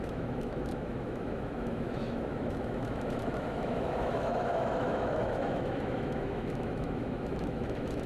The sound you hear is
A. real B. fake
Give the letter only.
B